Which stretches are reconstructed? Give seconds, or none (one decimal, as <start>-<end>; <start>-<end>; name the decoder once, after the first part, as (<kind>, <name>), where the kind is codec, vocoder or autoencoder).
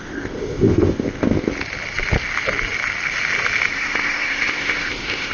0.0-1.5 (codec, ZipCodec); 3.7-5.3